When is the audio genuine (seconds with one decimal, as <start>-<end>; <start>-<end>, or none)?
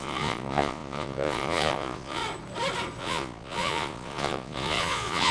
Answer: 2.2-3.0